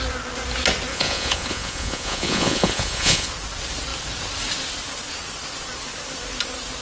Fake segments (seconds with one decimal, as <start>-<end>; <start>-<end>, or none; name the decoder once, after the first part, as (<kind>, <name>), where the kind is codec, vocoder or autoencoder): 0.9-3.3 (vocoder, Vocos)